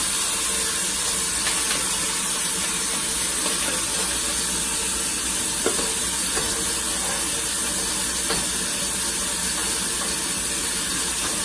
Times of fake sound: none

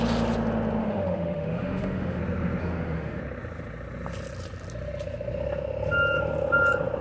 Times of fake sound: 0.8-2.2 (autoencoder, DAC-VAE); 2.6-3.2

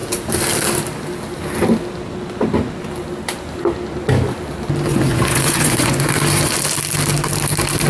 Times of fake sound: 4.9-6.1 (vocoder, Vocos)

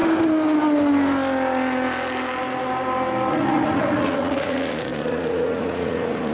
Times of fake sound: 3.3-6.3 (vocoder, Vocos)

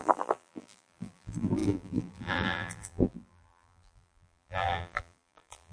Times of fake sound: 0.0-5.7 (vocoder, BigVGAN v2)

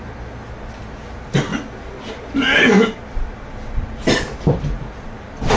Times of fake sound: 1.5-4.9 (vocoder, BigVGAN v2)

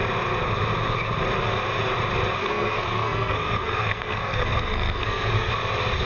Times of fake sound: 2.4-5.5 (codec, SNAC)

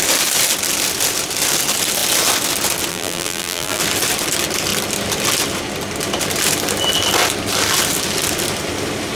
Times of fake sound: 2.9-3.8 (vocoder, BigVGAN v2)